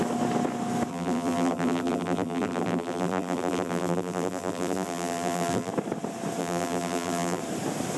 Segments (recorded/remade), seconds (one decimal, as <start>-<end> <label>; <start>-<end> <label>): 0.0-0.9 recorded; 0.9-5.7 remade; 5.7-6.4 recorded; 6.4-7.4 remade; 7.4-8.0 recorded